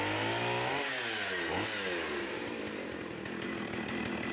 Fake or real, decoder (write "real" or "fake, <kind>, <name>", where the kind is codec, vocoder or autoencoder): real